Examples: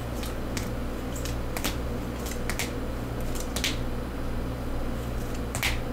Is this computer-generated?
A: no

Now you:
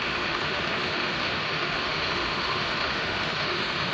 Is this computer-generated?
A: yes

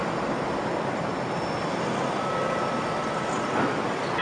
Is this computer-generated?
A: no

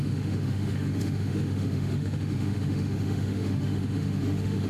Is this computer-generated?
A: yes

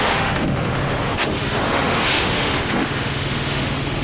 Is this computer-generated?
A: yes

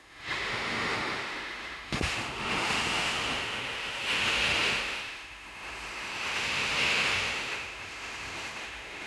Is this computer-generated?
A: yes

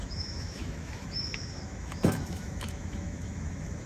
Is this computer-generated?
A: yes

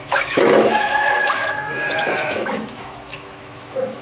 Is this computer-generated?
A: yes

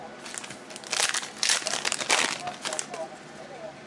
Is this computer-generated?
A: no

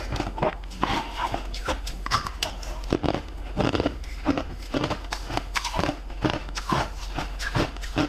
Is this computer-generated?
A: yes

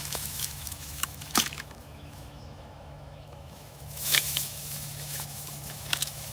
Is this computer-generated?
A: yes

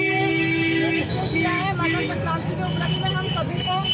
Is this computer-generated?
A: yes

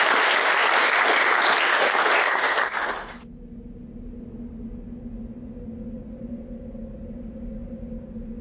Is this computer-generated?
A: no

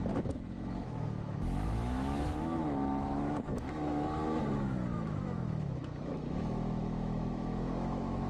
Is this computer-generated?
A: yes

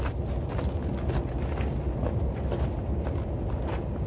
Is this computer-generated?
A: no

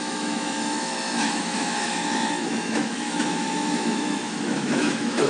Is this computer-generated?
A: yes